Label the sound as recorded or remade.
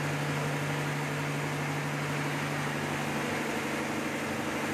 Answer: recorded